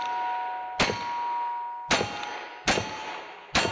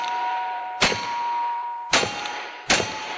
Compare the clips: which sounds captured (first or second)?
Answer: first